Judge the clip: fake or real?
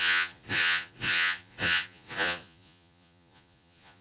fake